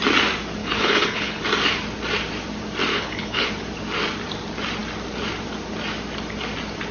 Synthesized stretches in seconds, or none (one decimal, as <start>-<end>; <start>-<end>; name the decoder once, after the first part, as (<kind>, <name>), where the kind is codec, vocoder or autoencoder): 0.6-1.4 (codec, HILCodec); 2.9-3.5